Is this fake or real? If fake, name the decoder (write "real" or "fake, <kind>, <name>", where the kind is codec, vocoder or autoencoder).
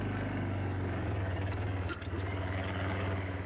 fake, codec, DAC